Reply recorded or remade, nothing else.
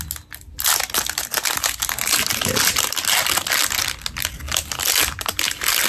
recorded